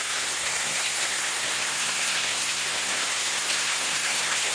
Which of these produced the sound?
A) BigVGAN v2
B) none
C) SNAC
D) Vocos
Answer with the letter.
C